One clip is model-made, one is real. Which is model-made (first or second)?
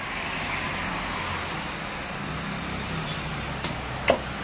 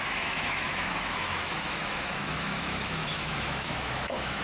second